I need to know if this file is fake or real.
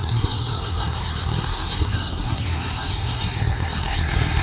fake